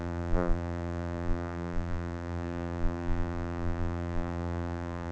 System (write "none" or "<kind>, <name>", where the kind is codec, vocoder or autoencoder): vocoder, BigVGAN v2